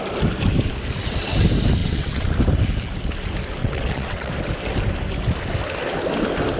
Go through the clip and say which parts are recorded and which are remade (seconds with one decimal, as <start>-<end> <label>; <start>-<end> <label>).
0.0-1.8 recorded; 1.8-2.3 remade; 2.3-3.6 recorded; 3.6-4.3 remade; 4.3-6.6 recorded